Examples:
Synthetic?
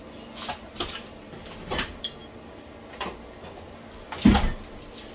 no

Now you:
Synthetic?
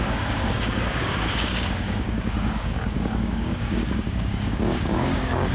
yes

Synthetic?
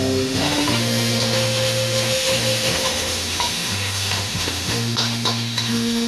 yes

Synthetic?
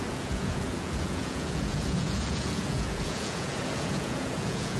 yes